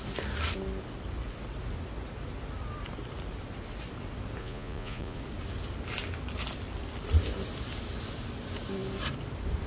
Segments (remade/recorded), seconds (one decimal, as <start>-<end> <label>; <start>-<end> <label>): 0.0-4.4 recorded; 4.4-5.2 remade; 5.2-9.7 recorded